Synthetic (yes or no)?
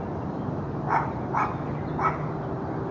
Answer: no